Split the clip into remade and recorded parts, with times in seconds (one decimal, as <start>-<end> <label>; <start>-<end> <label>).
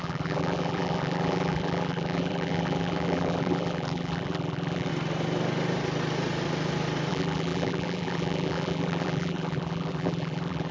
0.0-4.9 remade; 4.9-7.1 recorded; 7.1-10.7 remade